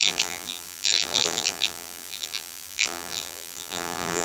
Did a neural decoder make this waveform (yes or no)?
yes